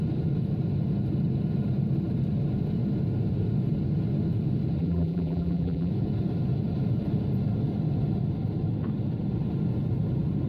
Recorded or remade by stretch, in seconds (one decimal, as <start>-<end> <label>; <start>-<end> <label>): 0.0-4.8 recorded; 4.8-5.9 remade; 5.9-10.5 recorded